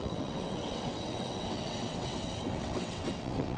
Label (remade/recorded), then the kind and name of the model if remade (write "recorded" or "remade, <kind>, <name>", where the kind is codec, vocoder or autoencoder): remade, vocoder, WaveNeXt